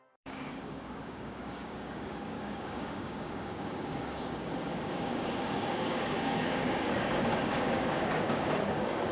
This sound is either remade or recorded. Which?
remade